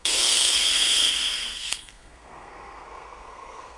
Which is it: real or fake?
fake